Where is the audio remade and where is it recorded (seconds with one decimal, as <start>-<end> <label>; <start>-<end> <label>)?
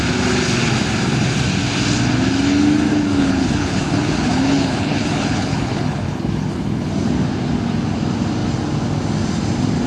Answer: 0.0-2.9 recorded; 2.9-6.9 remade; 6.9-9.9 recorded